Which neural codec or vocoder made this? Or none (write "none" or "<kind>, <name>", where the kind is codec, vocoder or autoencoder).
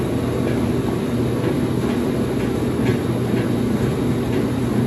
none